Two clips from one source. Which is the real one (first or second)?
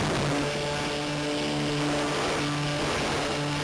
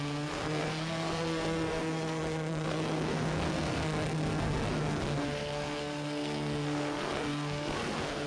first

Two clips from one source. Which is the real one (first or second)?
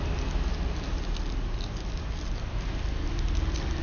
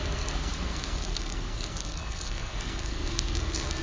first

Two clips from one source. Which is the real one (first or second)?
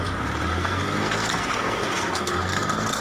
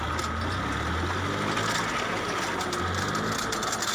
second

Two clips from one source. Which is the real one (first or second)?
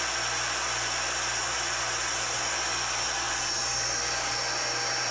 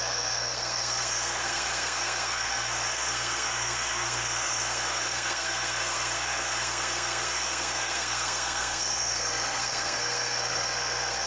first